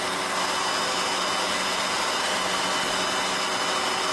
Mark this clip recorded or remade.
recorded